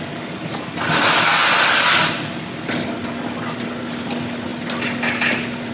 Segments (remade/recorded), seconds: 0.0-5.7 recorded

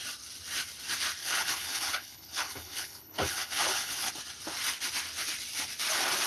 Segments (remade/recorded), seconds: 0.0-1.2 recorded; 1.2-4.1 remade; 4.1-6.3 recorded

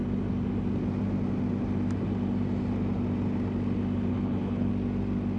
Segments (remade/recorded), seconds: 0.0-4.1 recorded; 4.1-4.7 remade; 4.7-5.4 recorded

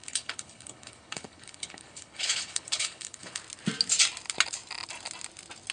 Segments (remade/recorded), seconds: 0.0-3.4 remade; 3.4-5.7 recorded

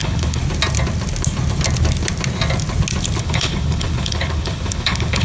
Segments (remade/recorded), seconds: 0.0-0.4 remade; 0.4-3.2 recorded; 3.2-5.2 remade